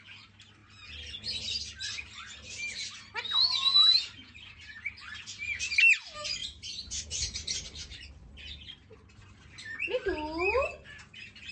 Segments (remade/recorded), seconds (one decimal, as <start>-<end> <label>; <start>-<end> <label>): 0.0-4.2 recorded; 4.2-4.9 remade; 4.9-6.4 recorded; 6.4-8.1 remade; 8.1-11.5 recorded